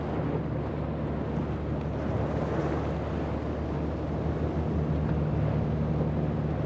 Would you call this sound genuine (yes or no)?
yes